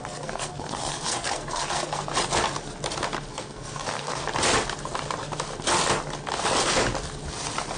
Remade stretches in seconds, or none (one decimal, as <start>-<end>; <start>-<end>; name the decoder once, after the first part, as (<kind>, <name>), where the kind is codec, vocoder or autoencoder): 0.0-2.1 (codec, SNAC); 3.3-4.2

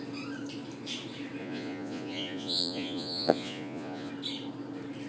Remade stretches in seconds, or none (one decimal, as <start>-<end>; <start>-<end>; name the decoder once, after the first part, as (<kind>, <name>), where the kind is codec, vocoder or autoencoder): 1.4-4.1 (vocoder, Vocos)

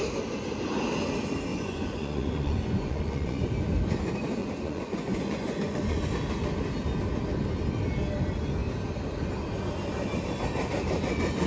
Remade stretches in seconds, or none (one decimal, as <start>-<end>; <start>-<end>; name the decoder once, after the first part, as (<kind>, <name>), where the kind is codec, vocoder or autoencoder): 1.5-3.5 (vocoder, Vocos); 4.4-6.1

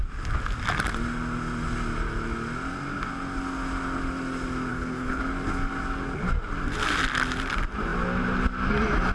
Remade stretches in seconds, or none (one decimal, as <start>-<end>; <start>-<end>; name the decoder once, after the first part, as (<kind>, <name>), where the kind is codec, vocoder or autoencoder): 4.7-5.2 (codec, HILCodec)

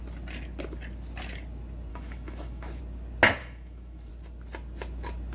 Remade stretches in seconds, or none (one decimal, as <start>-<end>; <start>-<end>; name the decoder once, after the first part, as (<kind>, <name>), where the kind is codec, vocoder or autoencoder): 1.9-2.8 (autoencoder, DAC-VAE); 3.4-4.1

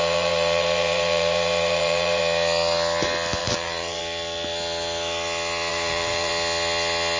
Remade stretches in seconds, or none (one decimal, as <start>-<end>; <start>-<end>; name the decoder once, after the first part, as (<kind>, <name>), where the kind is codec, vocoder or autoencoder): 0.0-2.2 (vocoder, BigVGAN v2); 3.4-4.0; 5.7-6.3